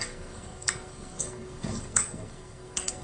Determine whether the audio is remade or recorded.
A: remade